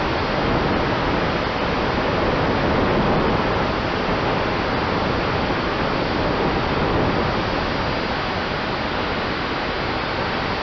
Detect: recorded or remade recorded